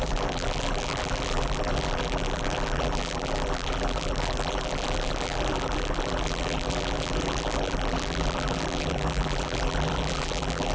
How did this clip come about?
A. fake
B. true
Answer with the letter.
A